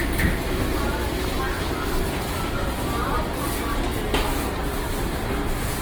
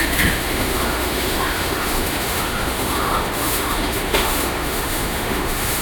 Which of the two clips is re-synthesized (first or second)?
second